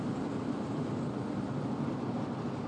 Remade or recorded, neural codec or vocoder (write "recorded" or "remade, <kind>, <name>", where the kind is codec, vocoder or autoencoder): recorded